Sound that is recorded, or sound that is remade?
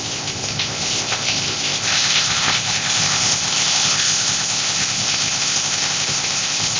remade